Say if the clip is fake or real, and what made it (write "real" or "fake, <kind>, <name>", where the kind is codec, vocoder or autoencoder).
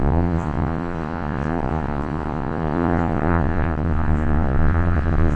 fake, vocoder, Vocos